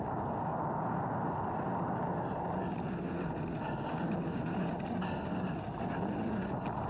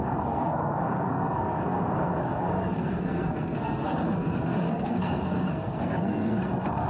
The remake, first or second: second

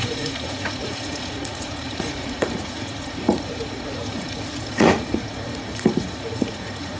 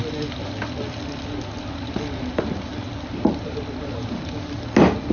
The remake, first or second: first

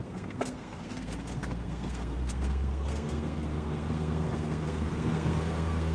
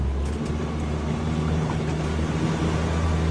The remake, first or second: first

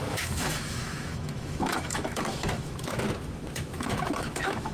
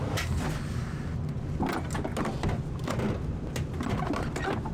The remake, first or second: first